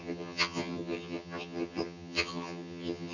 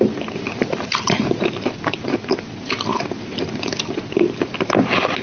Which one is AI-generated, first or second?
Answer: first